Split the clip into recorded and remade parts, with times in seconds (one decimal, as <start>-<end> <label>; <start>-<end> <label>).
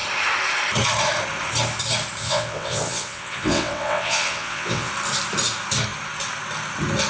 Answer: 0.0-2.2 recorded; 2.2-4.9 remade; 4.9-7.1 recorded